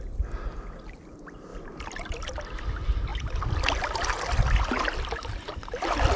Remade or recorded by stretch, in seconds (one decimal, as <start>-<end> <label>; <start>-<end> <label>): 0.0-6.2 recorded